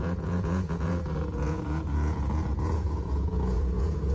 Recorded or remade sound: remade